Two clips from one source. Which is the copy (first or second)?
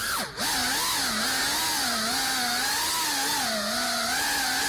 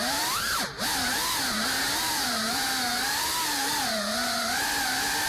second